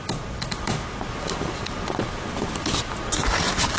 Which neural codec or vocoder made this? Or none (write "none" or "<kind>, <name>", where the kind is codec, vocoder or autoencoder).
none